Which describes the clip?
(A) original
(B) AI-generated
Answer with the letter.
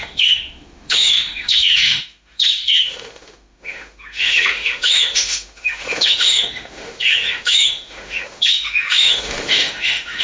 B